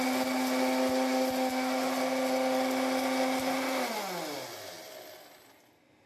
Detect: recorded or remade recorded